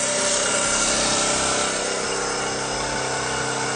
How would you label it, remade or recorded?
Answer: recorded